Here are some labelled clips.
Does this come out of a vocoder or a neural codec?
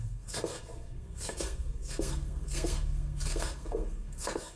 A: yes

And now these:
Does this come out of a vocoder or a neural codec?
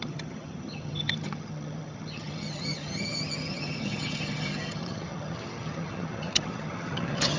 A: yes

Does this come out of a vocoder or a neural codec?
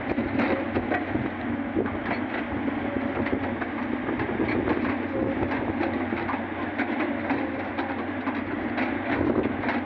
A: no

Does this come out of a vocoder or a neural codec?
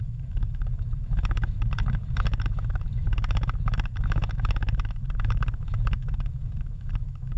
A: yes